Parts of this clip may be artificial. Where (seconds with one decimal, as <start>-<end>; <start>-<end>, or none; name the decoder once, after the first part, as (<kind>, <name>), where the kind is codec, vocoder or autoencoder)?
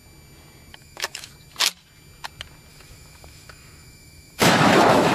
0.7-1.3 (autoencoder, DAC-VAE); 2.7-5.1